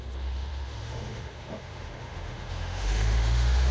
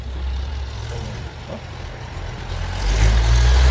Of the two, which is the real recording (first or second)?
second